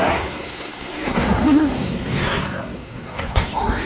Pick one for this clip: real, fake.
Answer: fake